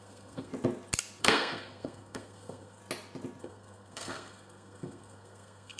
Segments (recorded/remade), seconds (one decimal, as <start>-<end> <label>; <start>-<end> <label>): 0.0-0.5 remade; 0.5-1.2 recorded; 1.2-2.8 remade; 2.8-3.4 recorded; 3.4-5.8 remade